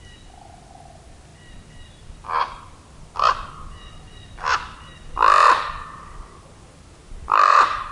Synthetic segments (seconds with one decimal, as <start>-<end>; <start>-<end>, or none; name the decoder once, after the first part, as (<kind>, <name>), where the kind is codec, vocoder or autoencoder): 7.0-7.9 (vocoder, BigVGAN v2)